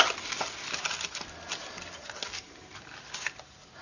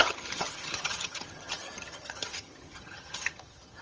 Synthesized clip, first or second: second